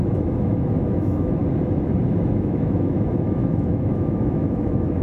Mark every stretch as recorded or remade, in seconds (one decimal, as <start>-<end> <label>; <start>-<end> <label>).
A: 0.0-1.4 remade; 1.4-2.0 recorded; 2.0-5.0 remade